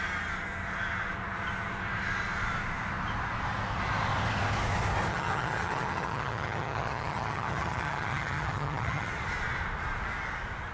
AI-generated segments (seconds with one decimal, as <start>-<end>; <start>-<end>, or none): 5.1-9.1